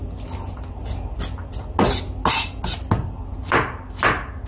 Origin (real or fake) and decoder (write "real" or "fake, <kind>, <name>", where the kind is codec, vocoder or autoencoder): real